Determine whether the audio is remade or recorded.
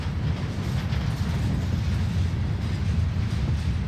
recorded